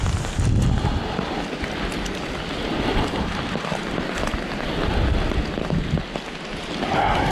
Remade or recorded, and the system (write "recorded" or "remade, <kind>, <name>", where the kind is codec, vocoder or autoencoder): recorded